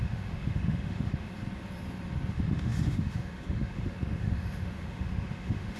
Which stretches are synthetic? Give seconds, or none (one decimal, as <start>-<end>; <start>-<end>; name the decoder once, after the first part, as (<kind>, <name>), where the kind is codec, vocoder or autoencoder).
0.0-1.3 (autoencoder, DAC-VAE); 2.3-5.8